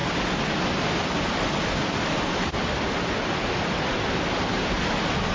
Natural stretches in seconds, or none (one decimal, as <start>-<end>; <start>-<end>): 0.0-5.3